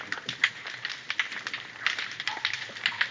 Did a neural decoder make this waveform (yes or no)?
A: no